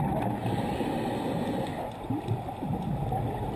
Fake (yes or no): no